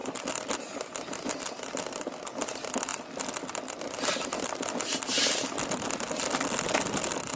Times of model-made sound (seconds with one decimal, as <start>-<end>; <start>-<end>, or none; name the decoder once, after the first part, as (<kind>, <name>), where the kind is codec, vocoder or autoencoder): none